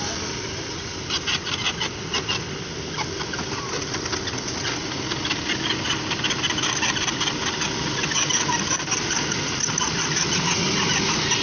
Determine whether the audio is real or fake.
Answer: real